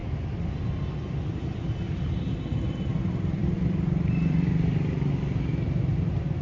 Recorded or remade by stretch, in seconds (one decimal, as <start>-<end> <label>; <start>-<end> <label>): 0.0-1.2 recorded; 1.2-6.4 remade